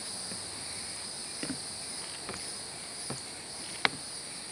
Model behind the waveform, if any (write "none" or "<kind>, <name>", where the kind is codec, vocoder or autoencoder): none